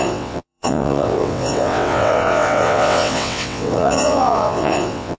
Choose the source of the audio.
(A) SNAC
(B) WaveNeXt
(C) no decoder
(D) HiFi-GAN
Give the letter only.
B